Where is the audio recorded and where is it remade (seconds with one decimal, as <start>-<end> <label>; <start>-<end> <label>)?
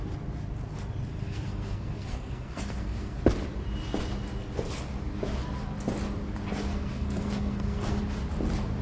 0.0-1.1 recorded; 1.1-3.2 remade; 3.2-6.7 recorded; 6.7-8.0 remade; 8.0-8.8 recorded